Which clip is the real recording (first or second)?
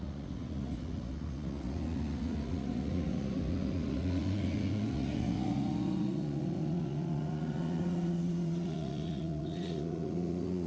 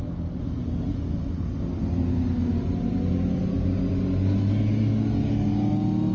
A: second